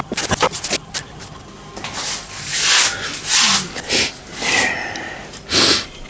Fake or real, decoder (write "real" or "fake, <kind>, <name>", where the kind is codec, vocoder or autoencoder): real